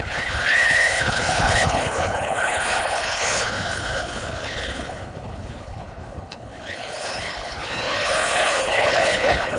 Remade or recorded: remade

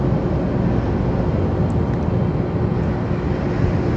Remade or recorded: recorded